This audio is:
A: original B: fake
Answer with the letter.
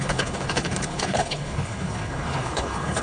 B